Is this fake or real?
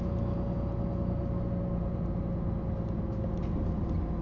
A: real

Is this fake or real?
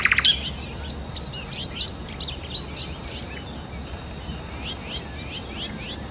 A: real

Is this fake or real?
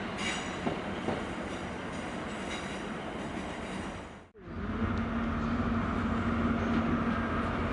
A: real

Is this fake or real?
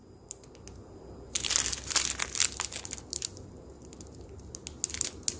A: real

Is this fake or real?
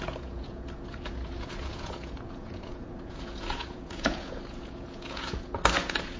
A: fake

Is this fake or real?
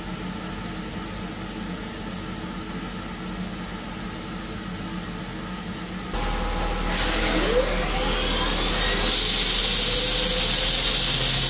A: real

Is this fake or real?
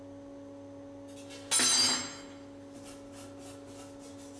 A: real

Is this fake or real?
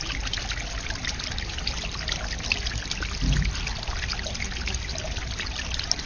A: real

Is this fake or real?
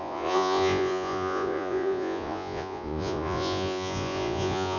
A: fake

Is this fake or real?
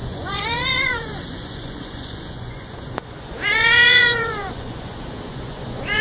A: fake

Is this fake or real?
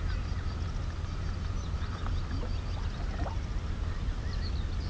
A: real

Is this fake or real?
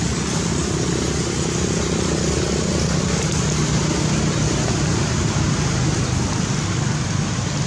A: real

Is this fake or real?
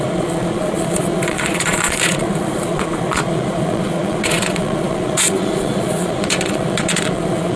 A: fake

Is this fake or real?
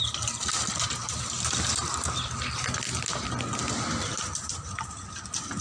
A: real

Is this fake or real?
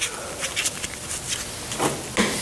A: real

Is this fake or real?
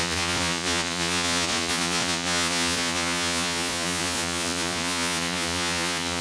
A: fake